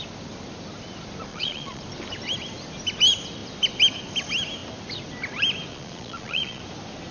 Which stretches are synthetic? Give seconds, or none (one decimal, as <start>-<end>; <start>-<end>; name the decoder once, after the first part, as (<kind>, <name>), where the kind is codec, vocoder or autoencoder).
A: 1.3-1.8 (vocoder, Vocos); 5.7-6.6